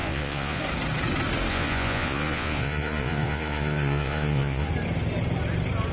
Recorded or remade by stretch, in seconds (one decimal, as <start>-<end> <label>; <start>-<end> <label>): 0.0-0.6 remade; 0.6-1.5 recorded; 1.5-4.7 remade; 4.7-5.9 recorded